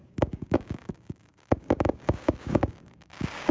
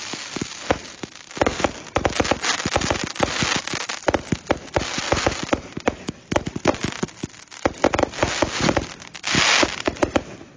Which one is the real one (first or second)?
second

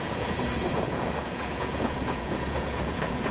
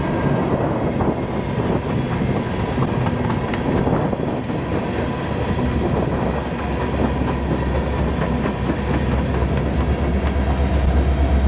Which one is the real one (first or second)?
second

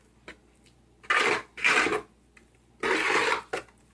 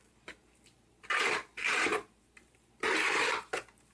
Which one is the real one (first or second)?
first